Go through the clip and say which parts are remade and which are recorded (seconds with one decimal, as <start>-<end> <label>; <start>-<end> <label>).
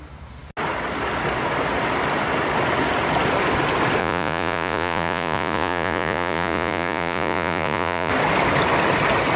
0.0-4.0 recorded; 4.0-8.1 remade; 8.1-9.4 recorded